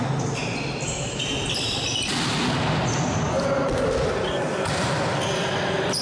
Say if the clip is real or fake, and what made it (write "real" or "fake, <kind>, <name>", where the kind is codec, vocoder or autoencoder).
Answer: real